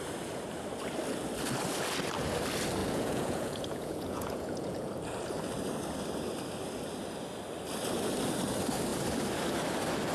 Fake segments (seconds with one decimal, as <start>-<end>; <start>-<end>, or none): 2.8-4.9